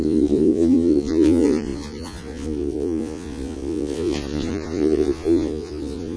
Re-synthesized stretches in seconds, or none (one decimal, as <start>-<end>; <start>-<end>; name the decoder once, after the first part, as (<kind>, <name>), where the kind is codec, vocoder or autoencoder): 0.0-6.2 (vocoder, Vocos)